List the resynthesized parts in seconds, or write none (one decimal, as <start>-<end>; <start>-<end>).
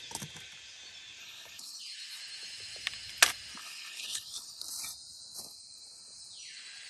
1.2-1.8; 3.6-4.6